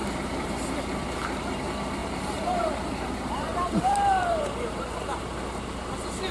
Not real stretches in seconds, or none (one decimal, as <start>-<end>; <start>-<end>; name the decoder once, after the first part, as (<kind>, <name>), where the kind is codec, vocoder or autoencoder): 0.0-0.5 (vocoder, BigVGAN v2); 2.0-5.8